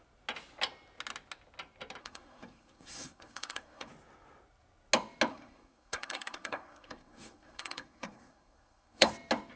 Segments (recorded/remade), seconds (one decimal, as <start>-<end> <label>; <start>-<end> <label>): 0.0-2.0 recorded; 2.0-3.9 remade; 3.9-5.3 recorded; 5.3-9.1 remade; 9.1-9.6 recorded